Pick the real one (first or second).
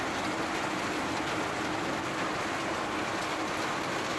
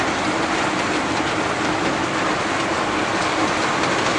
first